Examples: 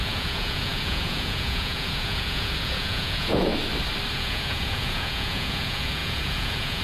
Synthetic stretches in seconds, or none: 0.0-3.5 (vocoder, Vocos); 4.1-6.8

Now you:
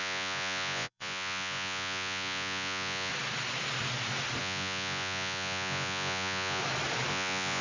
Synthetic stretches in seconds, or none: 0.0-3.1 (vocoder, Vocos); 4.4-6.6; 7.1-7.6

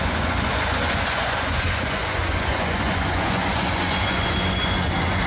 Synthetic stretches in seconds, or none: 0.0-5.3 (vocoder, Vocos)

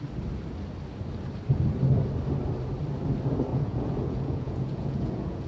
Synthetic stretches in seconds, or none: 3.5-5.5 (vocoder, Vocos)

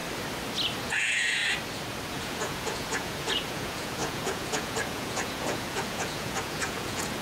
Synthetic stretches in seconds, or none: 0.8-1.4 (vocoder, Vocos); 2.1-7.2

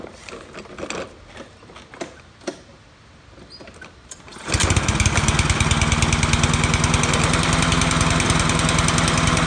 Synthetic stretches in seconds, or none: none

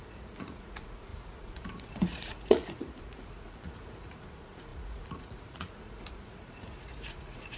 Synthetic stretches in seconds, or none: 0.0-7.6 (vocoder, Vocos)